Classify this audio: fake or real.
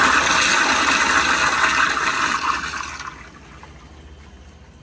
real